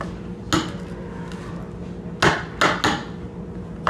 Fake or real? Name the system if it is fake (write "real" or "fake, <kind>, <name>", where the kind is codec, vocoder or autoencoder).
real